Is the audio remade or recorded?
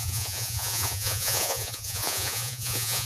remade